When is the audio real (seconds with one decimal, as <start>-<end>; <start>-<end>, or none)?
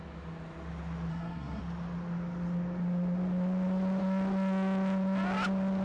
0.0-1.1; 1.6-5.8